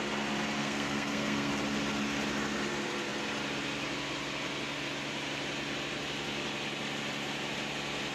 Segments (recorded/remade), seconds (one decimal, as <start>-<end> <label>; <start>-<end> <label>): 0.0-0.6 recorded; 0.6-1.5 remade; 1.5-8.1 recorded